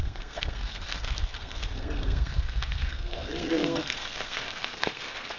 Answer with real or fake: fake